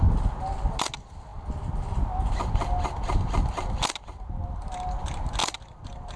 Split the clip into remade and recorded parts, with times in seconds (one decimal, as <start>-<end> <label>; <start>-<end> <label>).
0.0-6.2 recorded